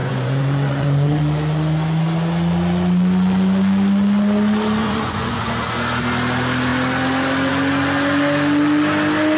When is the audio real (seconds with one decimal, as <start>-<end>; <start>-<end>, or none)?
1.2-4.8; 5.5-9.4